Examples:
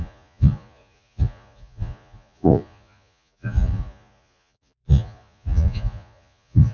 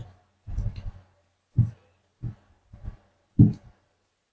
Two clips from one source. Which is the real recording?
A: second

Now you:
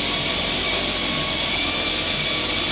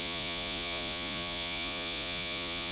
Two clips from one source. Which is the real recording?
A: first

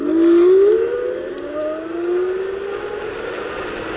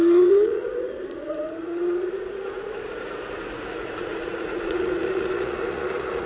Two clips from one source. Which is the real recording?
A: first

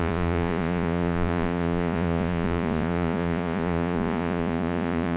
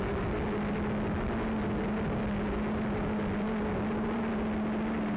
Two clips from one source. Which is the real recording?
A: second